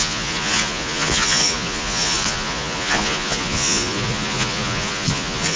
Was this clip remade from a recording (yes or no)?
yes